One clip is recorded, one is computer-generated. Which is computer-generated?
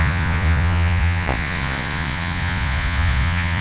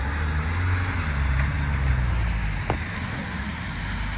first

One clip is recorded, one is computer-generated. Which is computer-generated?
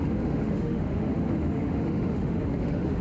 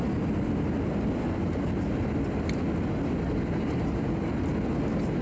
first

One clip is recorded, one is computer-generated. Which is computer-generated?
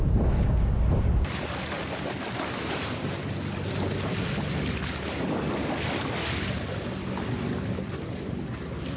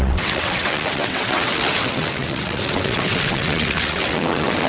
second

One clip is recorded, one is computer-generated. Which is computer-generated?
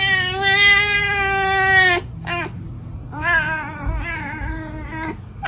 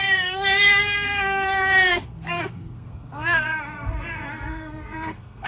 second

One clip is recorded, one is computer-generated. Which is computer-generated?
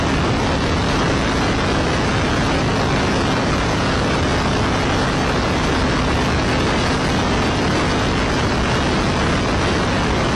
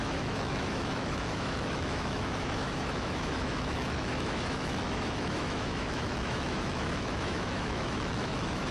second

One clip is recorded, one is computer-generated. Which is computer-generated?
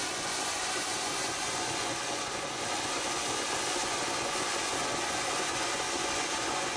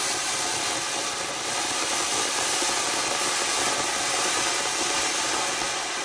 first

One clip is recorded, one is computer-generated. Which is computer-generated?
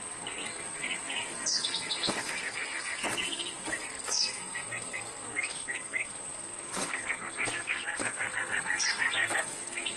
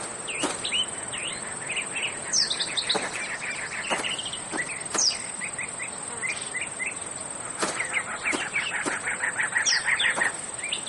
first